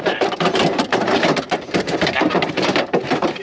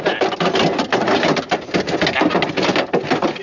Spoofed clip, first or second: first